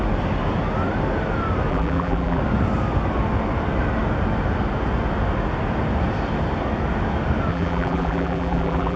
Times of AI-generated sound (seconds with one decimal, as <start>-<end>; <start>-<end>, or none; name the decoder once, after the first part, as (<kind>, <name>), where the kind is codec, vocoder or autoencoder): 1.7-2.4 (vocoder, BigVGAN v2); 7.5-9.0